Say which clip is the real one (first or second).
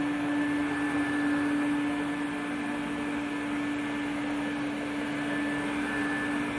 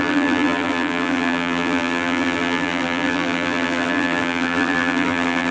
first